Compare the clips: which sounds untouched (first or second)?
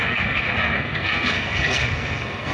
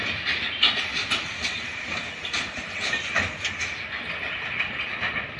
second